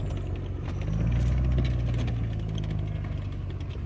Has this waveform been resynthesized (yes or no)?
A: no